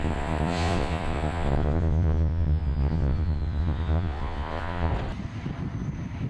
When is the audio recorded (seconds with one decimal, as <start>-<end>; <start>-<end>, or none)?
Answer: 4.9-6.3